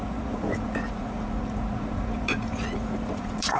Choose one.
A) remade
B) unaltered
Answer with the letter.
A